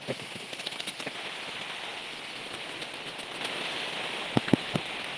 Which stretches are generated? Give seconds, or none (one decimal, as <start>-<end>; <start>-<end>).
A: none